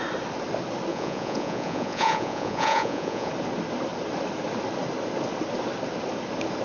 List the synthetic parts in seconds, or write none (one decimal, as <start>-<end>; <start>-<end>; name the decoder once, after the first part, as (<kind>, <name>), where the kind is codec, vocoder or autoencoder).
0.9-3.3 (vocoder, Vocos)